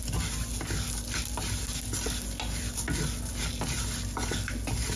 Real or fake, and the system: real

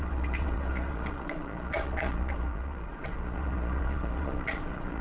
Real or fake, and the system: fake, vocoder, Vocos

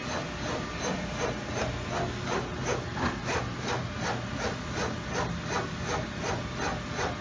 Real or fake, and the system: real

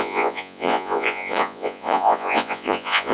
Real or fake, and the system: fake, vocoder, Vocos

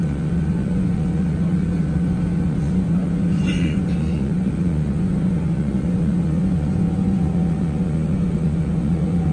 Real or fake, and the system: fake, vocoder, Vocos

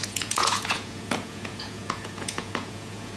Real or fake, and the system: fake, vocoder, Vocos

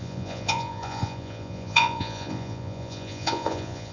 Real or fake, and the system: fake, vocoder, Vocos